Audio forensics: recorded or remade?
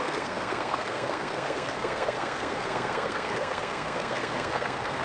remade